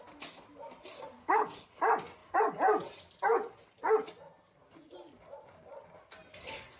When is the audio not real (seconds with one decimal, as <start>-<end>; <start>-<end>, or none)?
1.2-1.8